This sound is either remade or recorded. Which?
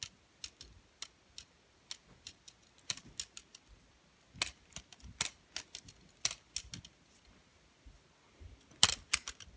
recorded